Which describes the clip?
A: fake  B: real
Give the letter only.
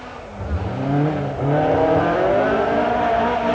B